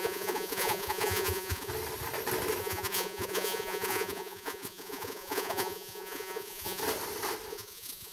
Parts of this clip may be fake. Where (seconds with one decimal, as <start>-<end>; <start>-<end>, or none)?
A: 0.0-1.7; 2.6-6.8; 7.5-8.1